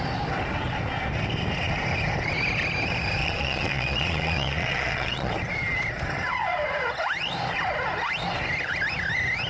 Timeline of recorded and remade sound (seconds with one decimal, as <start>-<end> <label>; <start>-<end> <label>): 0.0-3.2 recorded; 3.2-5.3 remade; 5.3-9.5 recorded